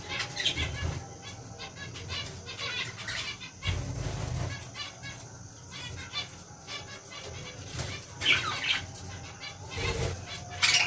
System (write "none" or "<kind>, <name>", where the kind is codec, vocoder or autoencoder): none